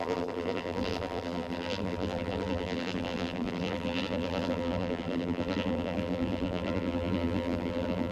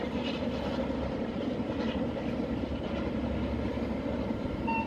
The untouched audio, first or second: second